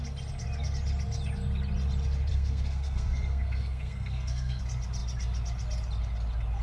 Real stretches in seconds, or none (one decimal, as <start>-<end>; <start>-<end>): 0.0-2.3; 4.6-6.6